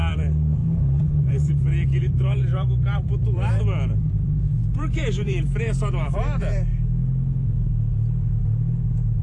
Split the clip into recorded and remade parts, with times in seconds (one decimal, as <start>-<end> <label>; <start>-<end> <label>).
0.0-6.7 remade; 6.7-9.2 recorded